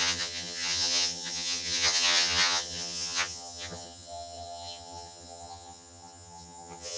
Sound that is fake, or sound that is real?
fake